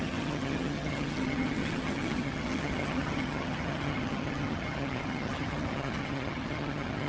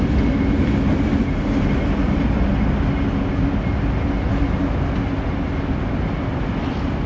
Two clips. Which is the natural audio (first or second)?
second